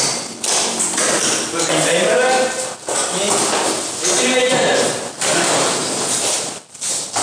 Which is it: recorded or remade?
remade